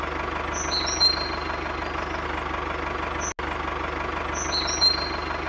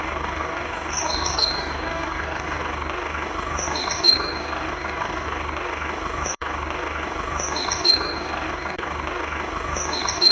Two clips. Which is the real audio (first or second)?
first